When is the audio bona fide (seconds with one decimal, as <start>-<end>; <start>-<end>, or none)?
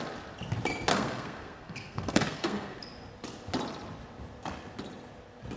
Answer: 0.0-0.9; 2.8-5.6